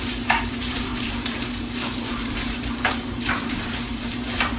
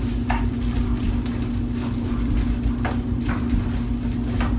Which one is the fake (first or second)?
first